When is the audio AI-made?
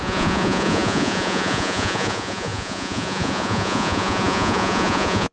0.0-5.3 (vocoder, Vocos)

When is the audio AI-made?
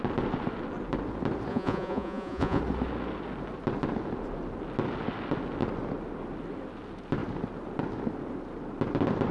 1.5-2.6 (vocoder, Vocos)